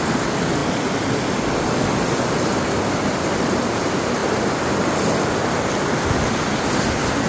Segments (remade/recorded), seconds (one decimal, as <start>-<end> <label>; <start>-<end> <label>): 0.0-2.5 recorded; 2.5-3.8 remade; 3.8-7.3 recorded